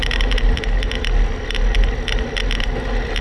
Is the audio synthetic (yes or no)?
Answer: no